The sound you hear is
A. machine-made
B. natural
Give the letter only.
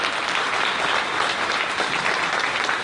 B